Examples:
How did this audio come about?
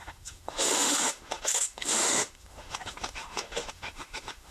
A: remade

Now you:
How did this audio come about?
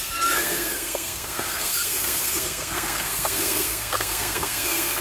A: remade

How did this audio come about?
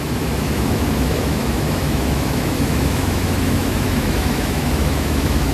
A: remade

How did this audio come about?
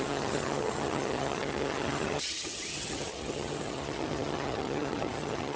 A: remade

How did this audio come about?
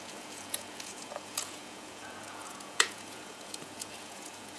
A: remade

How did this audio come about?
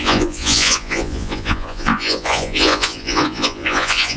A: remade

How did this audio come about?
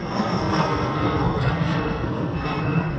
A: remade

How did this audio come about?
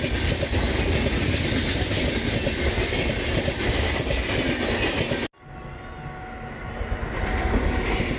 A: recorded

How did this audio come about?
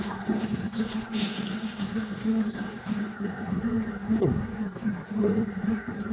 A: remade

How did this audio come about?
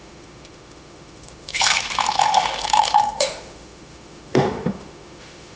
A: remade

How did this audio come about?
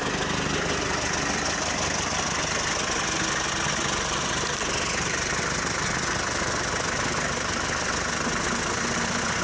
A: recorded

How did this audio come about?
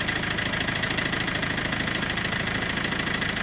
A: recorded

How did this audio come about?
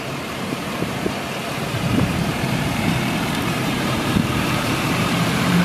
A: remade